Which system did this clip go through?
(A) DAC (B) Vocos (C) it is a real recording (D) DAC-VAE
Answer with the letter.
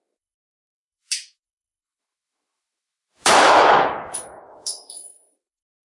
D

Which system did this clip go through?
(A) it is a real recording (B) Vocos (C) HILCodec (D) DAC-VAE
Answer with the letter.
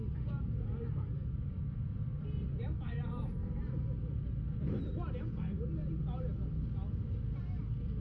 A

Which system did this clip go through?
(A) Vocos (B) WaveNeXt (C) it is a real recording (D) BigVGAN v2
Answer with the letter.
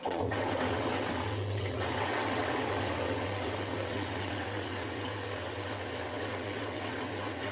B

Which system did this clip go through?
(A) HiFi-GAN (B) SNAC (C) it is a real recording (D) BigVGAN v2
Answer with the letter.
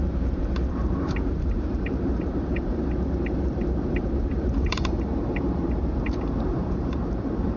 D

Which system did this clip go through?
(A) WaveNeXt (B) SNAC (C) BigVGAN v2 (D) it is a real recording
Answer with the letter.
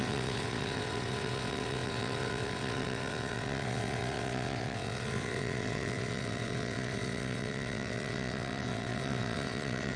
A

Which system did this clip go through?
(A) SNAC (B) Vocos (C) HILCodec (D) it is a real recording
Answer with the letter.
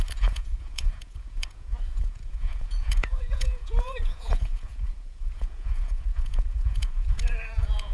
B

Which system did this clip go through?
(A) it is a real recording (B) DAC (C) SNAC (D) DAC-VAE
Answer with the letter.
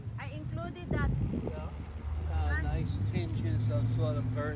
A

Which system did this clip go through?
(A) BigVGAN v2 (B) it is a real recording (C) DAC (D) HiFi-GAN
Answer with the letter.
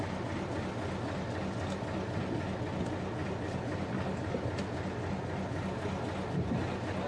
B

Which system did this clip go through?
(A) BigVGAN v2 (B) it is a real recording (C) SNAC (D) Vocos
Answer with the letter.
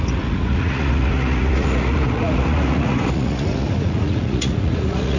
D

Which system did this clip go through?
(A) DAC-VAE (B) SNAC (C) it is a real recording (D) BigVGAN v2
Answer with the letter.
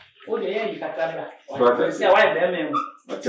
C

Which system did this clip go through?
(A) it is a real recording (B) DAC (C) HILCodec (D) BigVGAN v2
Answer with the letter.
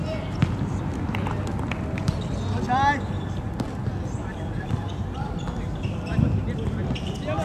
A